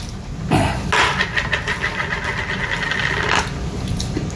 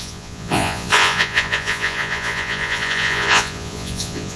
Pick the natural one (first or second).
first